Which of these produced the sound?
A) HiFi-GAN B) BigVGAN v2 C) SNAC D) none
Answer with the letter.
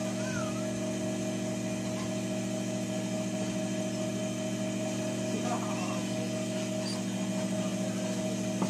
D